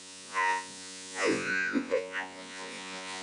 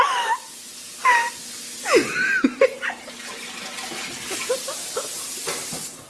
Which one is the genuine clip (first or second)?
second